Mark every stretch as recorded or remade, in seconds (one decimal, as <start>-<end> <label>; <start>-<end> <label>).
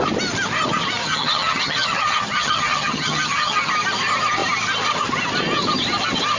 0.0-1.0 recorded; 1.0-3.7 remade; 3.7-6.4 recorded